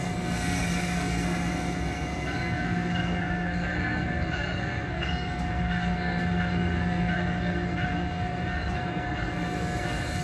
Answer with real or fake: fake